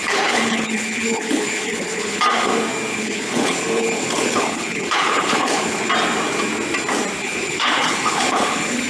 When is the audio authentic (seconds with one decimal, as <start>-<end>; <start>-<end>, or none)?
2.2-2.9; 5.9-7.2